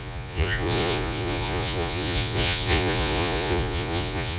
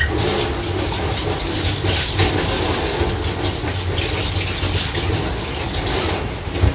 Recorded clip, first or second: second